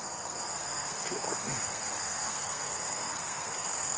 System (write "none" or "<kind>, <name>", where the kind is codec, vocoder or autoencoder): codec, SNAC